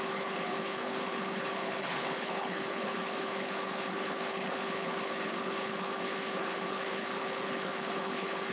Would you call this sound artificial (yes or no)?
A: yes